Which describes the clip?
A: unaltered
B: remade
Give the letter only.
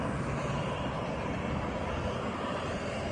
A